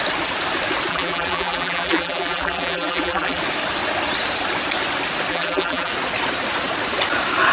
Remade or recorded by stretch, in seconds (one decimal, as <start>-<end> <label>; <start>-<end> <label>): 0.0-0.9 recorded; 0.9-3.4 remade; 3.4-5.3 recorded; 5.3-5.9 remade; 5.9-7.5 recorded